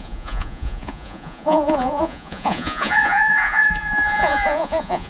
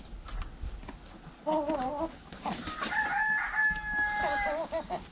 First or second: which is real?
second